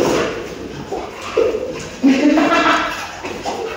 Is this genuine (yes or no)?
yes